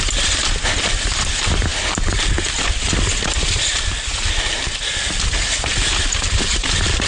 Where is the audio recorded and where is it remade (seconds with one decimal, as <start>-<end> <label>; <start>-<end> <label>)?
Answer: 0.0-7.1 recorded